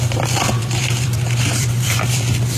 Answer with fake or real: fake